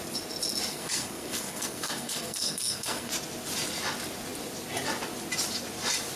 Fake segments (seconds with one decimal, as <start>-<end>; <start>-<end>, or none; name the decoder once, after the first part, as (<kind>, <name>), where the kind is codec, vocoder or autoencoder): 0.7-3.1 (codec, SNAC)